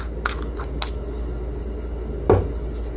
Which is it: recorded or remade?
recorded